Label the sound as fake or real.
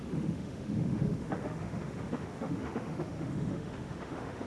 fake